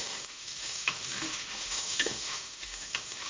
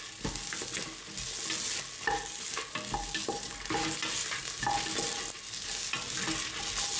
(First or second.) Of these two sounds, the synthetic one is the first